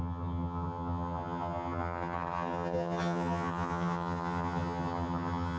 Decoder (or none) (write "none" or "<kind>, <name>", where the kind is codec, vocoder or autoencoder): vocoder, HiFi-GAN